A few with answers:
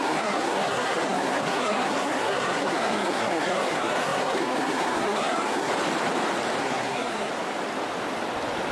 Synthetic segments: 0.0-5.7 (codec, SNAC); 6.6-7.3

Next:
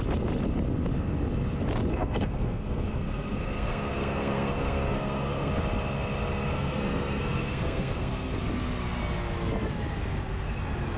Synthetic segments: 1.9-5.5 (codec, SNAC); 6.5-8.4

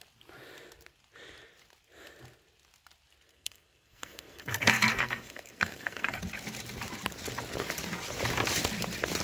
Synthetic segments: 3.3-6.2 (codec, SNAC)

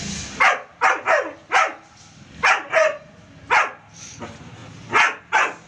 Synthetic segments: none

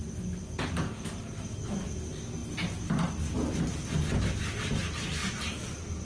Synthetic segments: none